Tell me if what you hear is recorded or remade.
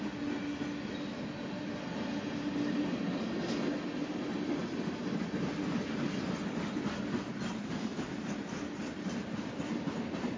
recorded